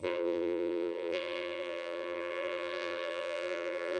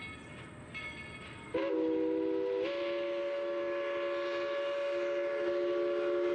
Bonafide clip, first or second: second